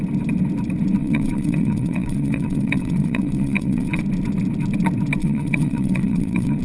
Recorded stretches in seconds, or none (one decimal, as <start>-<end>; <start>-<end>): 0.0-1.0; 4.0-5.2